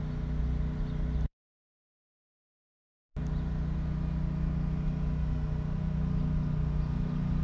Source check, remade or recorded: recorded